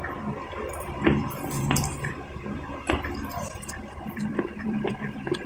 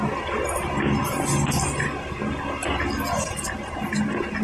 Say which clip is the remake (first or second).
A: first